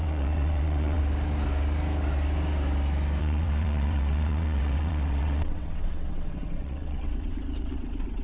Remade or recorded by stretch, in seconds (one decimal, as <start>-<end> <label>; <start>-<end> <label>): 0.0-1.0 remade; 1.0-3.2 recorded; 3.2-8.2 remade